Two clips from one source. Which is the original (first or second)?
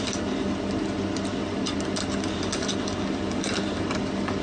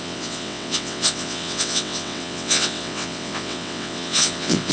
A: first